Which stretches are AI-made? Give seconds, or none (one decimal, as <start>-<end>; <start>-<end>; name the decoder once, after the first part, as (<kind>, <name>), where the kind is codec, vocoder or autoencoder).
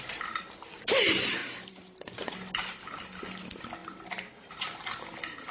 1.4-2.1 (vocoder, BigVGAN v2)